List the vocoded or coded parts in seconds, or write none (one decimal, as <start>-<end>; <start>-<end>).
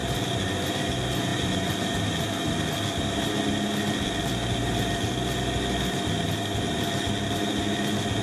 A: none